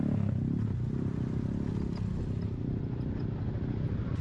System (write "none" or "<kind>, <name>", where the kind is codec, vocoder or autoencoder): none